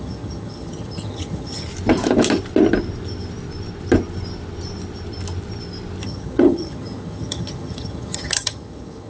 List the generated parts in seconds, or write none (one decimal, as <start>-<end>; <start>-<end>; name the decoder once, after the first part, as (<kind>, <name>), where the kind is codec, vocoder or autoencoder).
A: 0.0-1.7 (vocoder, HiFi-GAN); 6.0-9.1